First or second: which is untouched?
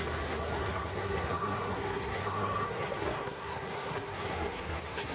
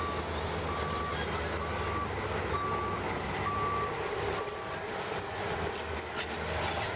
second